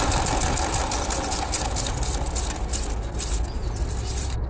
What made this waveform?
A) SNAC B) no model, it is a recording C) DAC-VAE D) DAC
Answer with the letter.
B